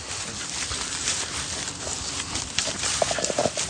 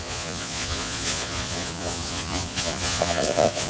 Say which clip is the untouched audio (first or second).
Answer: first